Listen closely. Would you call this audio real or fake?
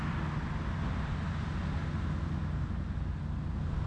real